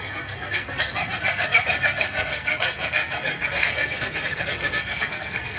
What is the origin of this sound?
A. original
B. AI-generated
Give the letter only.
B